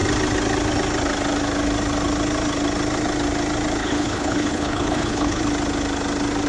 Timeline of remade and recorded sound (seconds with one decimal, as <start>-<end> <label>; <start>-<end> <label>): 0.0-3.8 recorded; 3.8-5.4 remade; 5.4-6.5 recorded